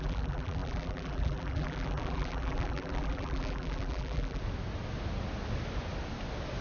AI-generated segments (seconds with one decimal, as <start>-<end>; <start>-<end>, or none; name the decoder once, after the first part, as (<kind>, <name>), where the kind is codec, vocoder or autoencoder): 0.0-4.4 (vocoder, BigVGAN v2)